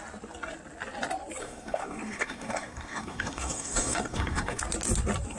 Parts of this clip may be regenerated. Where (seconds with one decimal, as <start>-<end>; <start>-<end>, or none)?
1.4-4.6